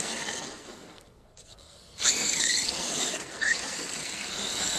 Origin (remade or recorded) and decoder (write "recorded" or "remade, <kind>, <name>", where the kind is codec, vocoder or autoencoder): remade, codec, SNAC